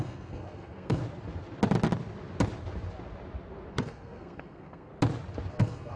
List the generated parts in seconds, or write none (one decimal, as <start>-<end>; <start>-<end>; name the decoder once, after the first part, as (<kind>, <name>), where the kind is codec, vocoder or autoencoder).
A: 0.0-1.0 (codec, SNAC); 3.7-4.9; 5.5-6.0

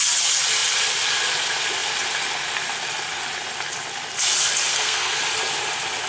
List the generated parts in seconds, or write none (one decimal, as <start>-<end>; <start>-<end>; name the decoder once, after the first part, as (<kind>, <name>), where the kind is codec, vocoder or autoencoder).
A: 4.7-5.2 (codec, SNAC)

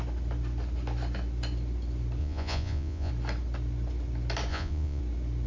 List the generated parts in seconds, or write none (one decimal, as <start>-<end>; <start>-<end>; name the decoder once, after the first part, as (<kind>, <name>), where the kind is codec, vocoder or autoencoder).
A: 2.2-3.1 (vocoder, Vocos); 4.5-5.0